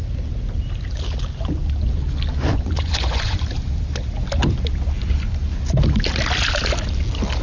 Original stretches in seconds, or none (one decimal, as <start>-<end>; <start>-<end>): 0.0-2.5; 3.4-7.4